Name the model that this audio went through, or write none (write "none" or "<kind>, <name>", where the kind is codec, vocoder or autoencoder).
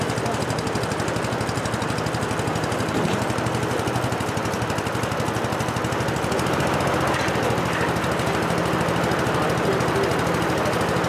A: none